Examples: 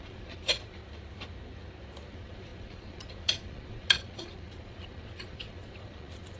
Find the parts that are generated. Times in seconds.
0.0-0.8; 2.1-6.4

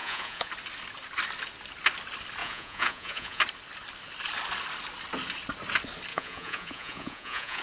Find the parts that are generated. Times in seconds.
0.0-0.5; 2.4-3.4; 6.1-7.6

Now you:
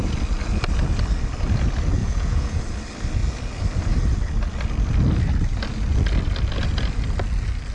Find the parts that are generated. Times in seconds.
2.0-2.6